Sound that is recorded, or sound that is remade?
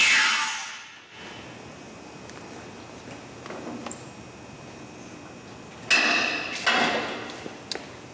recorded